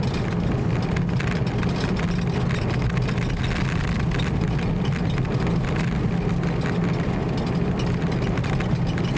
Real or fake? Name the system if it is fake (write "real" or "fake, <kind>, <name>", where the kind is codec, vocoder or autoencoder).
real